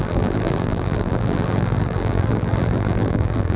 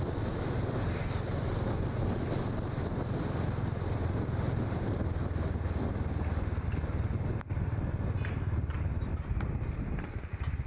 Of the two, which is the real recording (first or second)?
second